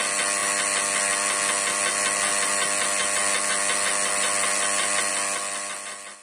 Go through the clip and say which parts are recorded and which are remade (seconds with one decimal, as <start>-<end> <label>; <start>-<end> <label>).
0.0-6.2 recorded